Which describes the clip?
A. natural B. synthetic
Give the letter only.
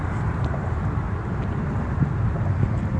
A